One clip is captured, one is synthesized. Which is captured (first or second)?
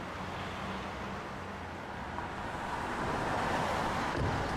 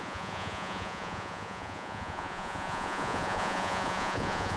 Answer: first